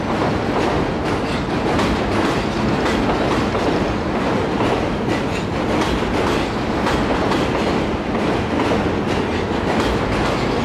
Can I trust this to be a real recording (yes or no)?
yes